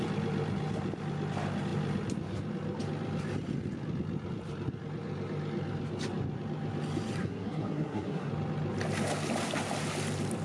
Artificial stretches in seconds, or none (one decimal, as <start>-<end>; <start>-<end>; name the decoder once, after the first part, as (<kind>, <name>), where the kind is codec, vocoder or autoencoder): 7.2-8.3 (codec, SNAC)